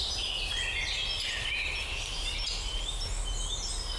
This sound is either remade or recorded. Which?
recorded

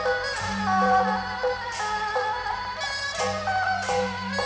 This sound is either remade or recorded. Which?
recorded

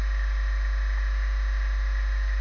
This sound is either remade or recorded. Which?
recorded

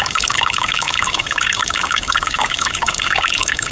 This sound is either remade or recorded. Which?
remade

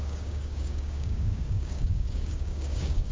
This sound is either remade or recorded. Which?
remade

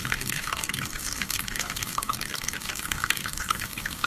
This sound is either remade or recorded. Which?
remade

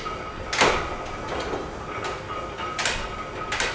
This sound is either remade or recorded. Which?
recorded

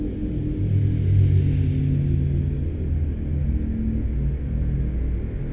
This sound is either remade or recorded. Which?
recorded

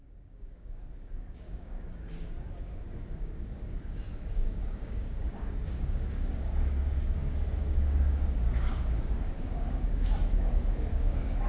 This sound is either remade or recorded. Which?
remade